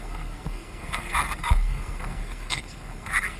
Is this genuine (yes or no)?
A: no